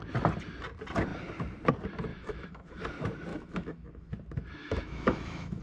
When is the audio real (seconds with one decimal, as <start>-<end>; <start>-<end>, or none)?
0.0-2.1; 2.8-3.3; 4.1-4.6